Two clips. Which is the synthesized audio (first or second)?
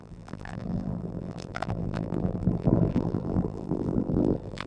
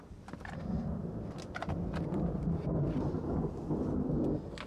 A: first